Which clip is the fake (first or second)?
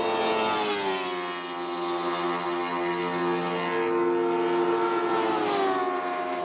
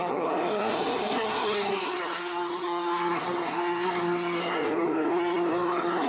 second